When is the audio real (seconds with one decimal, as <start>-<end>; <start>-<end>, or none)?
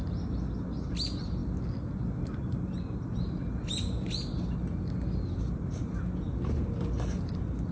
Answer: 0.0-7.7